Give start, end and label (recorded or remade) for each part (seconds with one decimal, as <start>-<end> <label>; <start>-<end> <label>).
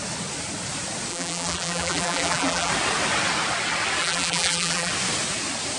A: 0.0-1.1 recorded; 1.1-2.7 remade; 2.7-4.0 recorded; 4.0-4.9 remade; 4.9-5.8 recorded